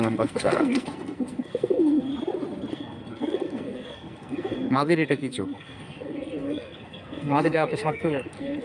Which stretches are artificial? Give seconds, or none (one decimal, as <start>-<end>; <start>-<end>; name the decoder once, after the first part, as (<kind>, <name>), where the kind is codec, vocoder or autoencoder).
0.0-2.1 (codec, SNAC); 2.7-8.6